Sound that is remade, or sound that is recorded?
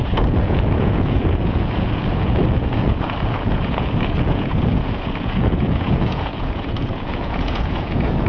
remade